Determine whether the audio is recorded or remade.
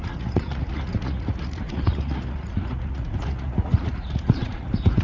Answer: remade